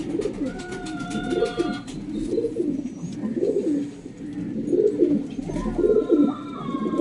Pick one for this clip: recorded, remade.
recorded